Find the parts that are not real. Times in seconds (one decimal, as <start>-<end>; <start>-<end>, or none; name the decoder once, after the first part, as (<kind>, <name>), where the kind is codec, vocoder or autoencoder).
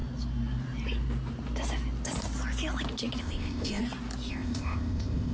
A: 3.2-3.8 (codec, ZipCodec); 4.3-5.3